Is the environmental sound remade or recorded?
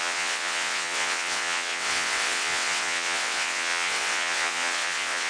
remade